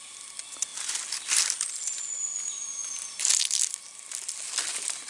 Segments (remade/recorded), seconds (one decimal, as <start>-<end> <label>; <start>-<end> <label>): 0.0-5.1 recorded